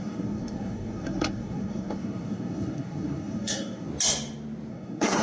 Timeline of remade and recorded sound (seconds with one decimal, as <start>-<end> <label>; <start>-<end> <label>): 0.0-3.9 remade; 3.9-4.7 recorded; 4.7-5.2 remade